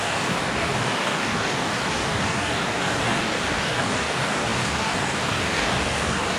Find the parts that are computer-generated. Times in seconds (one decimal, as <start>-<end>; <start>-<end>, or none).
0.0-6.4